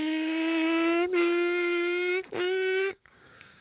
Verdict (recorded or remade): remade